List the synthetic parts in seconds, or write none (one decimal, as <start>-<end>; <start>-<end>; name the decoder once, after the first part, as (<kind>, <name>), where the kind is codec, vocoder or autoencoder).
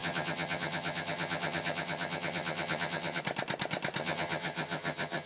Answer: 0.0-3.2 (vocoder, HiFi-GAN); 4.0-5.3